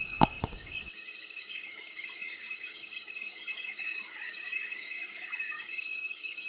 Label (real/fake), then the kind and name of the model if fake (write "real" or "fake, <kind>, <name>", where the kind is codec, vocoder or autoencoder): fake, codec, DAC